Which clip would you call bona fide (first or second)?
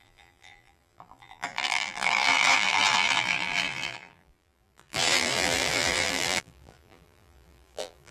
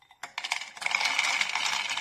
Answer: second